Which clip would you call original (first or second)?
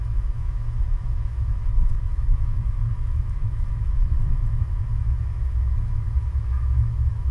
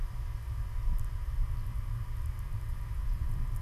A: second